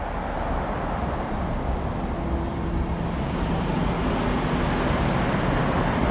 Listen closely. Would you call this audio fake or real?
real